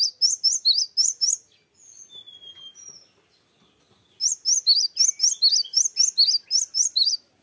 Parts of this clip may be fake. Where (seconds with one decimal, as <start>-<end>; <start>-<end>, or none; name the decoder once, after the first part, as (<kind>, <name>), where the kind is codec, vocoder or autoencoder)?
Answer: none